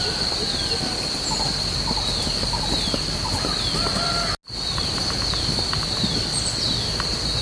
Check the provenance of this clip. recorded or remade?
recorded